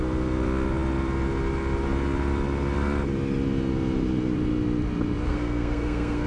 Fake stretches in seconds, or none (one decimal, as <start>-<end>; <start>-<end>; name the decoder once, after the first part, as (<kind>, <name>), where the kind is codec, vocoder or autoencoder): 5.3-6.3 (codec, SNAC)

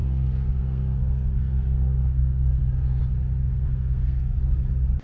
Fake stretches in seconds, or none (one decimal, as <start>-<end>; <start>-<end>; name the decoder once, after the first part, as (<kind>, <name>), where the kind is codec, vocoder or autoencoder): 0.0-3.0 (codec, SNAC); 3.4-4.4

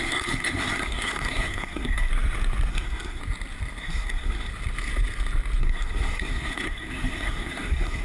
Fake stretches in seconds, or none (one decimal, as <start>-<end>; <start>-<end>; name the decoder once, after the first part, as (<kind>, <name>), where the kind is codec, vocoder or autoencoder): 0.0-2.1 (codec, SNAC); 2.7-3.2; 3.8-4.5; 5.6-8.0

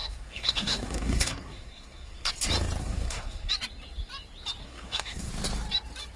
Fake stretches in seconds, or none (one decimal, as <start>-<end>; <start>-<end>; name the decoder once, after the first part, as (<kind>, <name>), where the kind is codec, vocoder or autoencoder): 0.0-2.3 (codec, SNAC); 2.8-3.5; 4.6-5.3

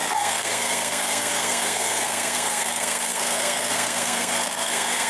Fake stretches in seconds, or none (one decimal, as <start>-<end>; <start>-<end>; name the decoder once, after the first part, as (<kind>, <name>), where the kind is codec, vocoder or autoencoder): 0.0-5.1 (codec, SNAC)

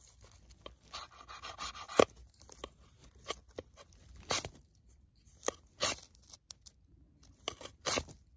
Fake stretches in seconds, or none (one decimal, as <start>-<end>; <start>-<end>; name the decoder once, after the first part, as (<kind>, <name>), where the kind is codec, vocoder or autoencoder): none